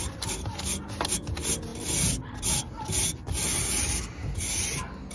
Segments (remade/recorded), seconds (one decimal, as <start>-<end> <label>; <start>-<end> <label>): 0.0-5.1 recorded